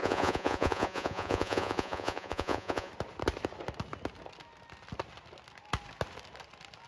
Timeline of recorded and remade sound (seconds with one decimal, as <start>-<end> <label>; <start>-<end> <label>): 0.0-2.9 remade; 2.9-6.9 recorded

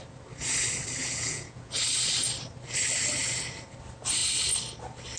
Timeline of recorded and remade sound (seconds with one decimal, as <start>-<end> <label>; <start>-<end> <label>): 0.0-1.0 recorded; 1.0-1.7 remade; 1.7-5.2 recorded

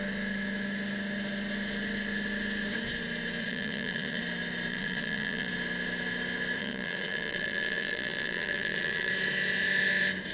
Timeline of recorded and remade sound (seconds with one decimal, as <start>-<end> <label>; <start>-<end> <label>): 0.0-3.4 recorded; 3.4-4.2 remade; 4.2-4.7 recorded; 4.7-5.5 remade; 5.5-6.6 recorded; 6.6-9.1 remade; 9.1-10.3 recorded